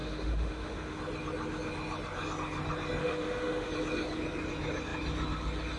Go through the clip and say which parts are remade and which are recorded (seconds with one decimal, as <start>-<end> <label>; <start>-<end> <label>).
0.0-1.0 remade; 1.0-3.0 recorded; 3.0-3.7 remade; 3.7-5.8 recorded